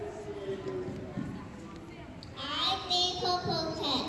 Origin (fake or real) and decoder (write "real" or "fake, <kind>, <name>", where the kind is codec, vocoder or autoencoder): real